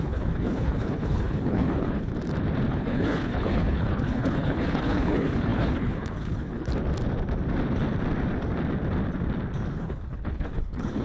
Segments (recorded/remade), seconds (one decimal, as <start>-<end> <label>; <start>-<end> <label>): 0.0-2.1 remade; 2.1-2.7 recorded; 2.7-6.7 remade; 6.7-9.7 recorded; 9.7-11.0 remade